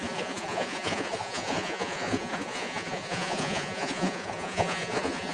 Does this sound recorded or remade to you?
remade